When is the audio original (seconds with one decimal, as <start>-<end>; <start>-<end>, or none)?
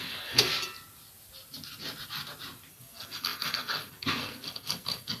0.5-2.7